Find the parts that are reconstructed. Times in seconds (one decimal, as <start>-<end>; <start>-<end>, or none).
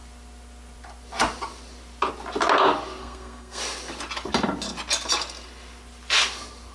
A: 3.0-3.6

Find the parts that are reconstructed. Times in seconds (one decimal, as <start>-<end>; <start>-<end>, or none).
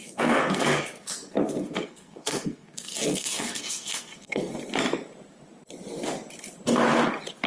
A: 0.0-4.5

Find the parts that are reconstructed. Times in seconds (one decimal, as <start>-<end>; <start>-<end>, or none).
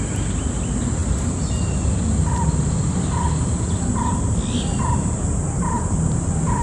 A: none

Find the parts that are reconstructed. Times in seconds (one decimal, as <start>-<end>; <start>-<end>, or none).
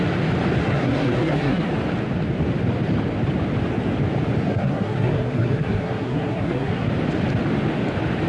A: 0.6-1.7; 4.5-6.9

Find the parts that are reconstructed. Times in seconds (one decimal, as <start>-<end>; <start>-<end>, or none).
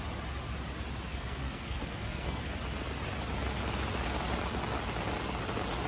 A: 1.1-2.4